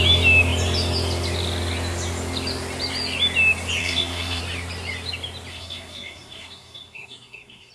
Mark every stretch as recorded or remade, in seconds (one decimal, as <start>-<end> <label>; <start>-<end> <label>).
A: 0.0-3.8 recorded; 3.8-4.4 remade; 4.4-5.5 recorded; 5.5-7.7 remade